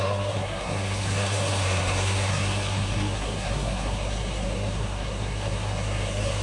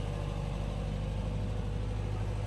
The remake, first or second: first